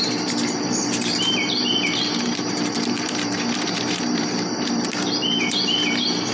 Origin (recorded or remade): remade